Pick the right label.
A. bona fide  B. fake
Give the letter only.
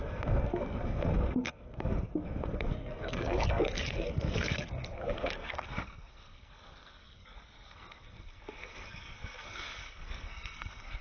B